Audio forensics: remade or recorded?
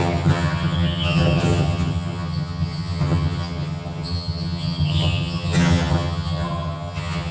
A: remade